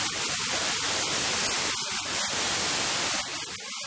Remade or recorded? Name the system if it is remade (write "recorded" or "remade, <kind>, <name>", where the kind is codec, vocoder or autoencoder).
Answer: recorded